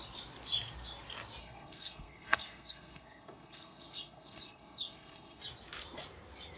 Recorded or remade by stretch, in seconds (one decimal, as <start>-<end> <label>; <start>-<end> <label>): 0.0-1.4 recorded; 1.4-5.4 remade; 5.4-6.6 recorded